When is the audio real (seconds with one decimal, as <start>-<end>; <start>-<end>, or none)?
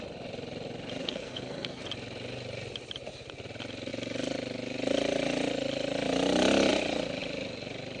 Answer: 0.0-1.0; 1.8-8.0